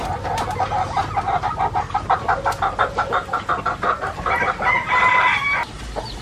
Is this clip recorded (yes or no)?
yes